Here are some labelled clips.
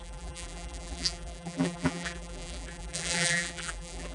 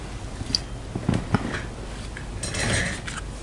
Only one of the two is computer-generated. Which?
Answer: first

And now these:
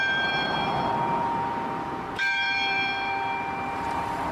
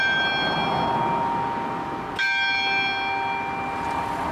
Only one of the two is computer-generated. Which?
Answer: first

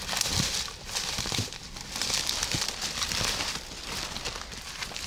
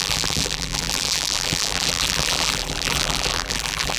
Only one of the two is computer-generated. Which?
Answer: second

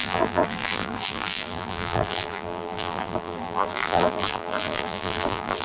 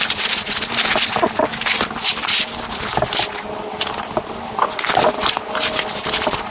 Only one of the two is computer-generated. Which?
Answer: first